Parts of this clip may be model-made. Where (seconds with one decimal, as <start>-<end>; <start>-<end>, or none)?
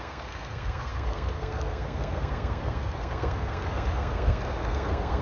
0.0-5.2